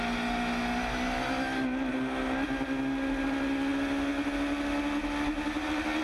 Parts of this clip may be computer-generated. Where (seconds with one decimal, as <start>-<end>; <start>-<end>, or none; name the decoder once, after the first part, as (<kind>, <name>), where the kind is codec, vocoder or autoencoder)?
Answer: none